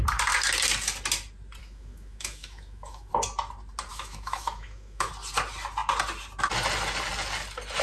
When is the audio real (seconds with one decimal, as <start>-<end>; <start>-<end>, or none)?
0.0-1.6; 3.1-3.9; 5.1-7.8